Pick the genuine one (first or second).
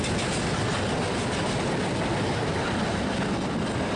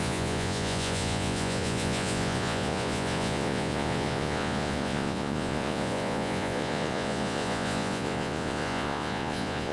first